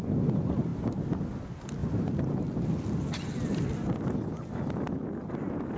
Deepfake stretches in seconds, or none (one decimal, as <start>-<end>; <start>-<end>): none